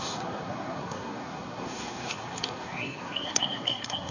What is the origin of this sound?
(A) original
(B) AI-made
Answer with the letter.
B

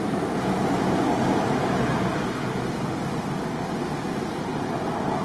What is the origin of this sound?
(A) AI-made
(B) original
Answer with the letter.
B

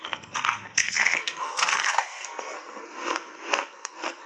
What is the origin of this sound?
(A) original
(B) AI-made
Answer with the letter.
B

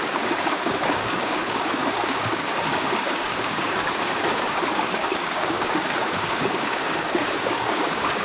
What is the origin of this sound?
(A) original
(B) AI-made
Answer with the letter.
B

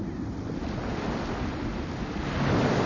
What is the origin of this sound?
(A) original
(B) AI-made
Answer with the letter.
A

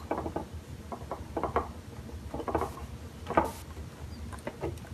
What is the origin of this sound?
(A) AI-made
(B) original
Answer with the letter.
B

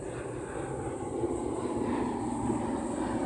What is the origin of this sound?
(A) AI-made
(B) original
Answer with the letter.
B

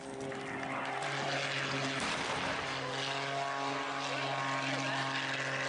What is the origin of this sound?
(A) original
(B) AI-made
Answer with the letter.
A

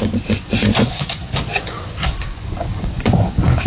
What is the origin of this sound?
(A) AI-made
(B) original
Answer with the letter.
A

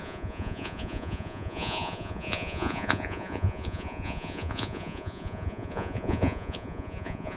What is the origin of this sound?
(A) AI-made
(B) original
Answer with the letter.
A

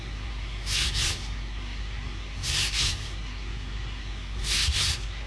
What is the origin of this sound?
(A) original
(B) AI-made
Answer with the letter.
B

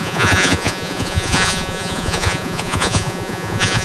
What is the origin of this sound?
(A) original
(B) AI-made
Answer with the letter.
B